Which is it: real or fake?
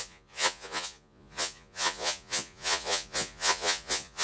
fake